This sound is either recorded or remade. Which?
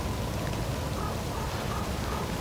recorded